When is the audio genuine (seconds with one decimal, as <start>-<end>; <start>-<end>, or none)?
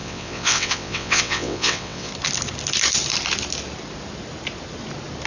2.1-5.3